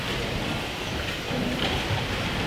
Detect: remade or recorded recorded